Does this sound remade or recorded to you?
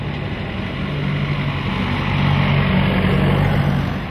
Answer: recorded